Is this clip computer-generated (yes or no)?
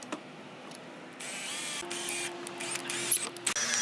no